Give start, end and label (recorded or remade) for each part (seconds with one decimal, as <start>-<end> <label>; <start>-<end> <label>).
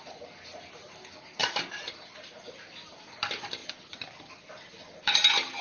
0.0-1.4 recorded; 1.4-2.3 remade; 2.3-5.6 recorded